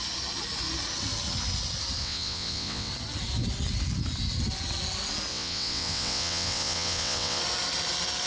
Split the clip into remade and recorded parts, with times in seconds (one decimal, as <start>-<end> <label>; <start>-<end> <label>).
0.0-2.0 recorded; 2.0-2.9 remade; 2.9-5.3 recorded; 5.3-7.4 remade; 7.4-8.3 recorded